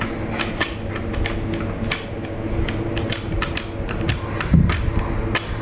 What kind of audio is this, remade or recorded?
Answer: recorded